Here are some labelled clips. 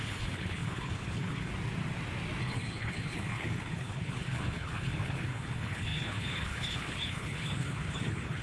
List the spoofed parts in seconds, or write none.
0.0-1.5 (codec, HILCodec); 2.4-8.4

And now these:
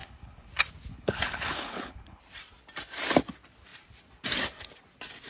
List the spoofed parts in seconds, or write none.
0.0-0.5 (codec, HILCodec); 0.9-2.2

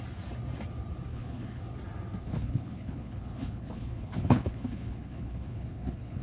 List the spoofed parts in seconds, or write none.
1.1-1.6 (codec, HILCodec); 2.2-6.2

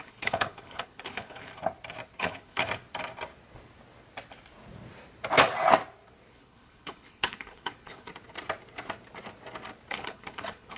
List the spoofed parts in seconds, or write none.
0.0-1.5 (codec, HILCodec); 2.2-2.6; 6.3-8.1; 9.9-10.8

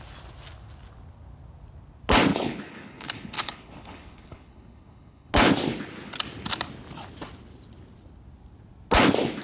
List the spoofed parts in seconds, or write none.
2.3-5.3 (codec, HILCodec)